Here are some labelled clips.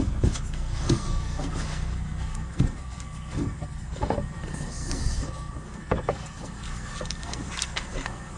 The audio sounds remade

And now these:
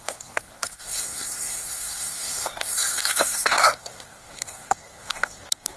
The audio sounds remade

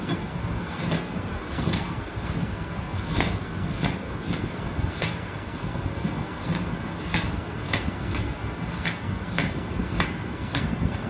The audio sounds remade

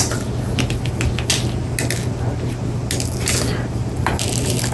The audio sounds recorded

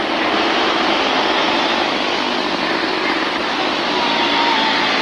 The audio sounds recorded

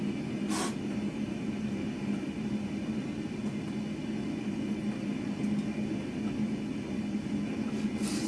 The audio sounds recorded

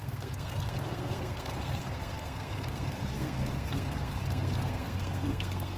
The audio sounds remade